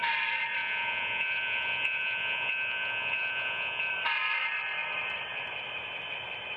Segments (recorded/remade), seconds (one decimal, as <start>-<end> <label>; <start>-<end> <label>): 0.0-0.6 recorded; 0.6-3.9 remade; 3.9-6.6 recorded